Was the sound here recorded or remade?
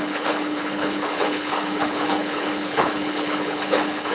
remade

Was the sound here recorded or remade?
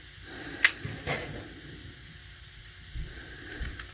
recorded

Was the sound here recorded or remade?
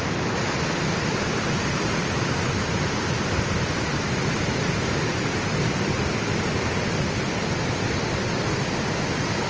recorded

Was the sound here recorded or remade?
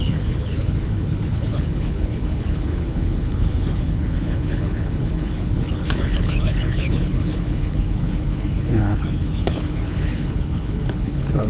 remade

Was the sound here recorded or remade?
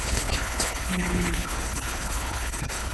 remade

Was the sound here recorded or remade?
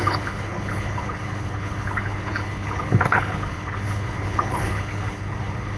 remade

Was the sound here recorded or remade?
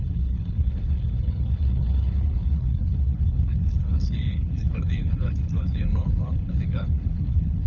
remade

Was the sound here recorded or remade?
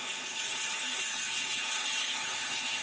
remade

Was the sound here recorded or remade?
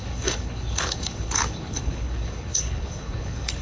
remade